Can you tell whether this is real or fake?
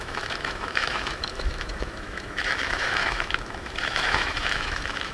fake